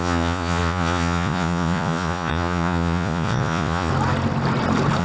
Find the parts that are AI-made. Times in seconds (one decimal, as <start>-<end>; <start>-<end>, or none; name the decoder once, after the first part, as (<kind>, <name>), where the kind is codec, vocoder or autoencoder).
0.0-3.9 (vocoder, Vocos)